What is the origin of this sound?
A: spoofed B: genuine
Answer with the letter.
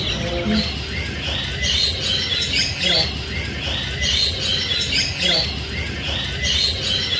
B